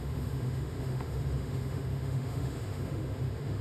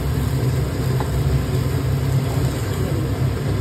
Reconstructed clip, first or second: first